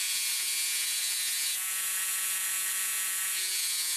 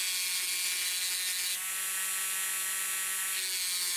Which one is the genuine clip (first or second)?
second